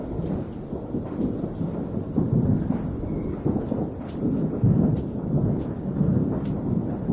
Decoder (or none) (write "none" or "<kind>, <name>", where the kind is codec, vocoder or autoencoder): none